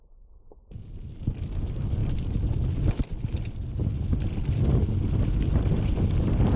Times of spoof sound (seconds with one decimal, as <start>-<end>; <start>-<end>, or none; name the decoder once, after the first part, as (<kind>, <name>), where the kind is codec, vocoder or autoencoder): none